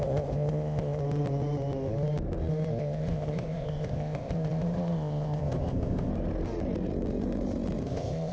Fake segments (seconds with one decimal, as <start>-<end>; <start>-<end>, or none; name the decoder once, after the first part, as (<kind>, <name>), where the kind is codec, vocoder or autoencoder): 0.0-1.0 (codec, ZipCodec); 2.8-6.1; 7.8-8.3